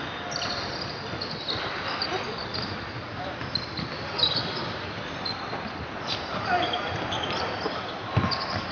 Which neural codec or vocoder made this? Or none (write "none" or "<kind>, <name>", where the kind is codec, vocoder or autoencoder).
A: none